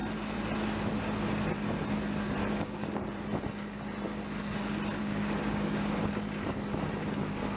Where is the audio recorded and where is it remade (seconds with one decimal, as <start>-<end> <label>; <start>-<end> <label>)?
0.0-2.4 recorded; 2.4-2.9 remade; 2.9-5.0 recorded; 5.0-6.1 remade; 6.1-7.6 recorded